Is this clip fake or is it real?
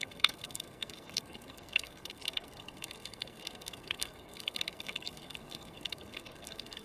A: fake